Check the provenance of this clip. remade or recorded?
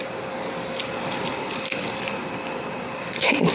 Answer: recorded